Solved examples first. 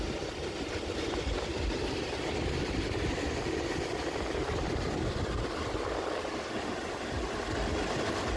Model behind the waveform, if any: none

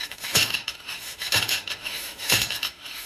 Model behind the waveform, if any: autoencoder, DAC-VAE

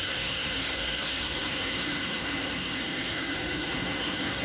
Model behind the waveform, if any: codec, SNAC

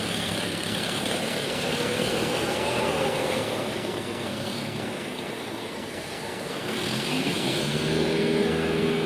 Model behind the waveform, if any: codec, SNAC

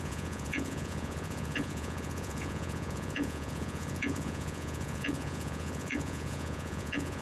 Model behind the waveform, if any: vocoder, Vocos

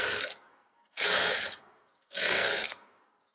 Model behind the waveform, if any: codec, SNAC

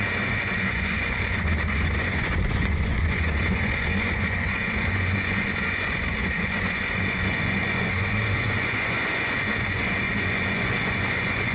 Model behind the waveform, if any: vocoder, Vocos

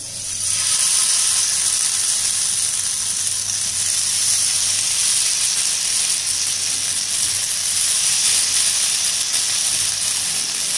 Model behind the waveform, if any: none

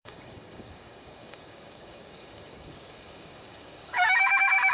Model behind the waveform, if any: codec, DAC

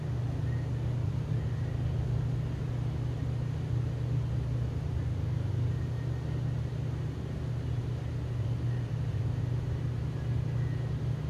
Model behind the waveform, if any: none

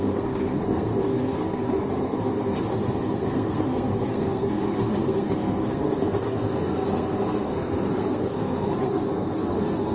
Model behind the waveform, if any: codec, SNAC